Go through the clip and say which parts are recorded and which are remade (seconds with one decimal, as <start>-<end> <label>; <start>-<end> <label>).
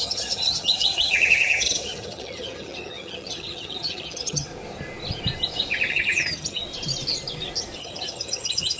0.0-4.5 remade; 4.5-5.9 recorded; 5.9-6.6 remade; 6.6-7.8 recorded; 7.8-8.8 remade